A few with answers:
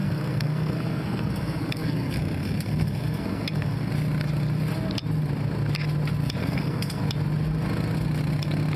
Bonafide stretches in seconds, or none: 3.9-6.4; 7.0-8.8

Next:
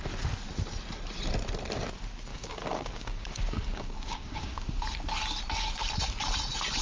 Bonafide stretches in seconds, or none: 0.0-2.3; 4.8-6.8

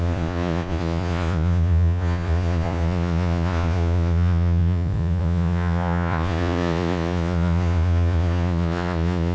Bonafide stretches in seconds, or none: none

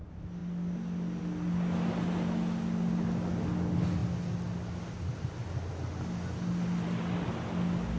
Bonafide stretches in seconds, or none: 0.0-8.0